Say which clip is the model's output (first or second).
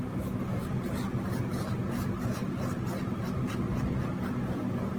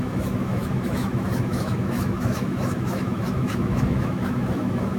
second